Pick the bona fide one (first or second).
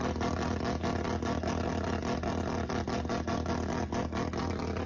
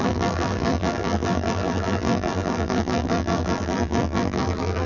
first